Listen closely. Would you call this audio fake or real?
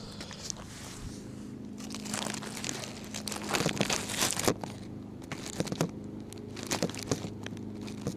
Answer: real